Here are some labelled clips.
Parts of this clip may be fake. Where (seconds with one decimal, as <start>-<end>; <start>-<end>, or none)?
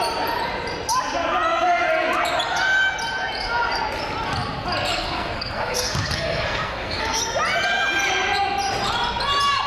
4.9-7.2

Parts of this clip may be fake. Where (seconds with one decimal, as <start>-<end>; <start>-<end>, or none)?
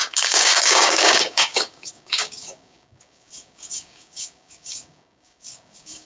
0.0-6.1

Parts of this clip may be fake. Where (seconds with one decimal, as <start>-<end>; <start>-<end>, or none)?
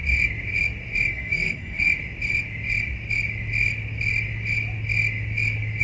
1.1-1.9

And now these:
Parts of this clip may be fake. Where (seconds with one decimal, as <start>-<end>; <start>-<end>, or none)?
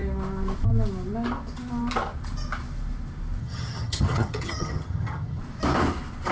3.4-5.4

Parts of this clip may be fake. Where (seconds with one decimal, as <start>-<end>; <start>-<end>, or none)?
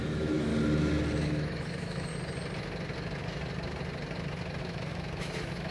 0.0-0.5; 1.3-2.1; 4.6-5.7